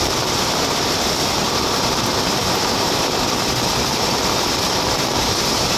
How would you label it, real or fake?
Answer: fake